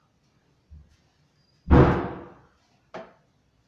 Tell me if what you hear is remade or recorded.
recorded